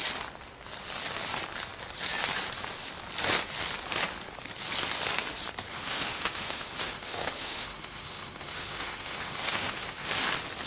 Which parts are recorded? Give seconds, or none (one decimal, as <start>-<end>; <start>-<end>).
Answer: 0.0-5.7; 10.1-10.7